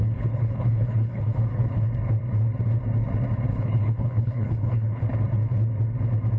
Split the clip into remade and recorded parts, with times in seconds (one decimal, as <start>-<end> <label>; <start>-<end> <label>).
0.0-1.9 remade; 1.9-3.5 recorded; 3.5-5.0 remade; 5.0-6.4 recorded